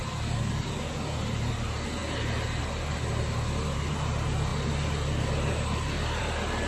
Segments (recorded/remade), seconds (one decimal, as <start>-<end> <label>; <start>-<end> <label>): 0.0-6.7 recorded